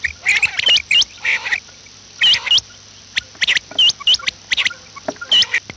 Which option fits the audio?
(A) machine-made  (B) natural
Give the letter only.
B